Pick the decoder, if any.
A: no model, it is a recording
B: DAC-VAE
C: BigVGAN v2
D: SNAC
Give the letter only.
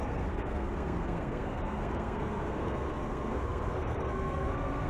D